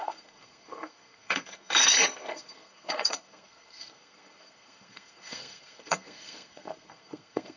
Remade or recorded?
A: remade